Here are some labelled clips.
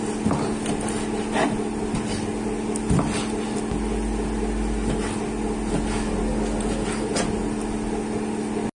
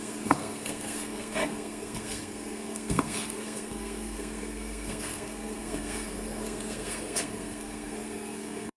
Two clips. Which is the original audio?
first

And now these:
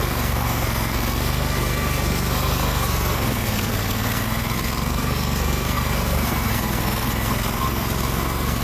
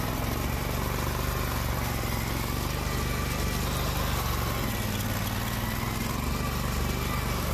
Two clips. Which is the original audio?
second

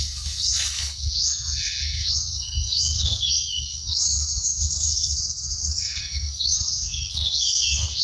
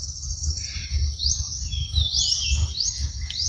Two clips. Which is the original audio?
second